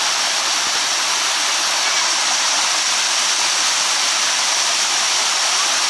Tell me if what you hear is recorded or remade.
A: recorded